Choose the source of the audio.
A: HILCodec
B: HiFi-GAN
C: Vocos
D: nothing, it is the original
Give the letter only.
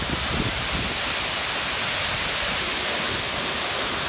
D